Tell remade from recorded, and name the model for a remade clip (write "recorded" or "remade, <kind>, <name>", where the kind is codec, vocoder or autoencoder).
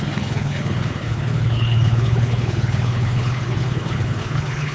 remade, codec, HILCodec